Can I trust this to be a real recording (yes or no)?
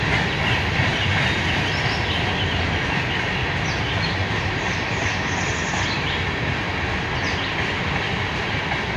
yes